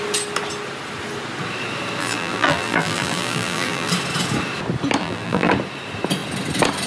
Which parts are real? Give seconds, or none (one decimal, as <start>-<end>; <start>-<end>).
0.0-2.0; 3.9-5.0; 5.5-6.9

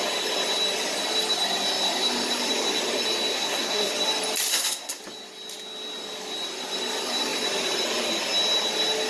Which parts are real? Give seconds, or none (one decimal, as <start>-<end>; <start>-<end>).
0.0-3.3; 3.9-4.5; 5.0-9.1

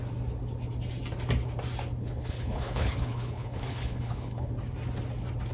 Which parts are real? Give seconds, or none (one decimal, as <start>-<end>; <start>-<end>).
0.0-2.0; 4.5-5.5

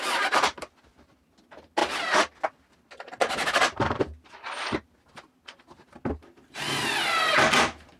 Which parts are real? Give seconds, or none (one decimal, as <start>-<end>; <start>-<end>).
0.0-8.0

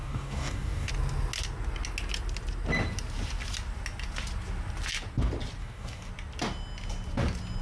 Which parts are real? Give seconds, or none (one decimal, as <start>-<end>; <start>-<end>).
0.9-5.6; 6.1-7.6